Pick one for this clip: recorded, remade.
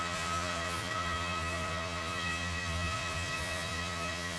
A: remade